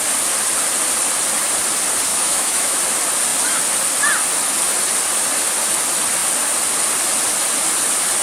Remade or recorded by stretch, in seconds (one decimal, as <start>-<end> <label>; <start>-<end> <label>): 0.0-2.1 recorded; 2.1-2.8 remade; 2.8-8.2 recorded